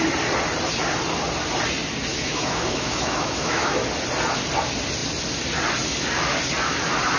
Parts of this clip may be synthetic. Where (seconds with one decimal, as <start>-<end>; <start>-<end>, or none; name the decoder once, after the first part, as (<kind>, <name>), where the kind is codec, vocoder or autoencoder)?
2.1-3.9 (autoencoder, DAC-VAE)